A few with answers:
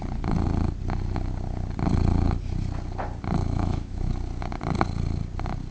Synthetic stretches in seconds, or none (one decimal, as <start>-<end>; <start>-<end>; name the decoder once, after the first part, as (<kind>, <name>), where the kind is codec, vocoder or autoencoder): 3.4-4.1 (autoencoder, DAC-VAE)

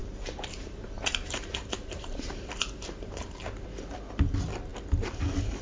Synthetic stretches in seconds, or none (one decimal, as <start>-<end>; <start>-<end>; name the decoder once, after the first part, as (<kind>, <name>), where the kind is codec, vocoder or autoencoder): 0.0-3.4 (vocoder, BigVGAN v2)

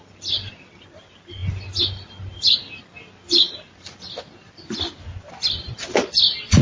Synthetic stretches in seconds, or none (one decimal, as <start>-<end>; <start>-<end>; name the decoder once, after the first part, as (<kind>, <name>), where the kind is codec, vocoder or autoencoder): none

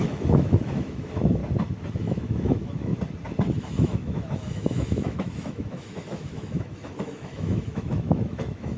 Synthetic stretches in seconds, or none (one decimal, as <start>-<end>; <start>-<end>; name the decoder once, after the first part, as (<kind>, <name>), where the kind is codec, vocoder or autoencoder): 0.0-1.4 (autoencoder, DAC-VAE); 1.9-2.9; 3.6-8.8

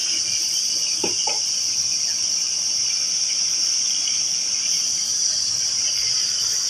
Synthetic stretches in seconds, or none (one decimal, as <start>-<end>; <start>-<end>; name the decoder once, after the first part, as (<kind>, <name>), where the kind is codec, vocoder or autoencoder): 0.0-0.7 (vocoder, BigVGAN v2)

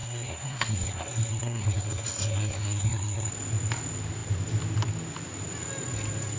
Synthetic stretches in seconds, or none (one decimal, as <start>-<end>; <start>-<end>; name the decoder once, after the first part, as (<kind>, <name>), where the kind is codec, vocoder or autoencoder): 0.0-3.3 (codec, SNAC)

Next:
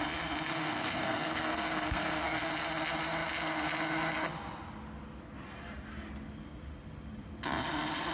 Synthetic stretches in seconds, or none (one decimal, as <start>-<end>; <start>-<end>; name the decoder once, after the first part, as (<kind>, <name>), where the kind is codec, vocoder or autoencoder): 0.5-2.5 (codec, SNAC)

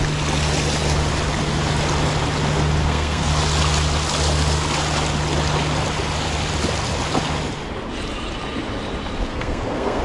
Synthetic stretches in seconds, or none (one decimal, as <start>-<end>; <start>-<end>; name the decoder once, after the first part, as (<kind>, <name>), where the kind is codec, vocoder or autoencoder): 2.8-3.3 (codec, SNAC); 9.3-10.0